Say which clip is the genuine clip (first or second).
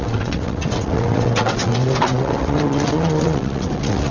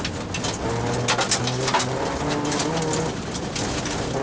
second